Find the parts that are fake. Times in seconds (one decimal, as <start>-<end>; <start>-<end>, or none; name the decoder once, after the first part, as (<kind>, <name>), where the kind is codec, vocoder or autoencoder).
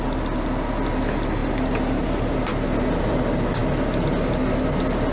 none